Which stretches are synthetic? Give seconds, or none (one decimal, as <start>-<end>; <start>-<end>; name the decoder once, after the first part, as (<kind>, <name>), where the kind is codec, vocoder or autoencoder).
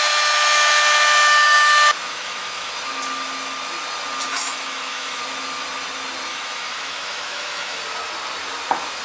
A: 2.1-2.7 (autoencoder, DAC-VAE); 4.3-5.2; 6.3-7.8